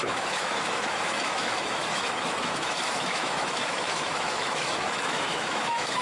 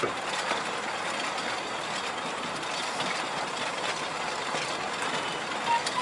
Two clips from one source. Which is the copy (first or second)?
first